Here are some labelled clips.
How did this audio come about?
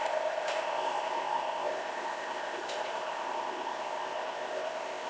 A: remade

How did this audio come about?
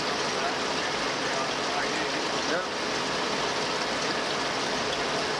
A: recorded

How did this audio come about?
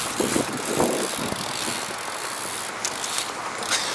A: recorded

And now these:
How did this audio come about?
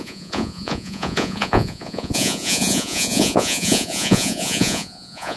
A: remade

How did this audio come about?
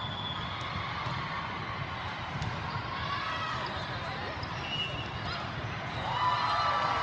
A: recorded